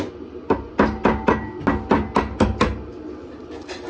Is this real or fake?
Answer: real